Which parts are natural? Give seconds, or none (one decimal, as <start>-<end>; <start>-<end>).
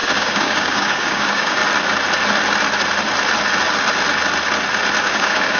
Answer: 1.6-5.0